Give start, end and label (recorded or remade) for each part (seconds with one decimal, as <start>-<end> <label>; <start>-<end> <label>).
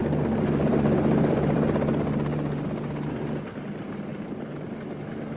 0.0-1.9 remade; 1.9-5.4 recorded